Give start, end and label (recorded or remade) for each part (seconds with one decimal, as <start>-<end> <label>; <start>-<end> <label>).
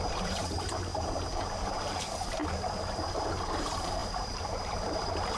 0.0-0.9 remade; 0.9-1.9 recorded; 1.9-2.4 remade; 2.4-3.0 recorded; 3.0-5.4 remade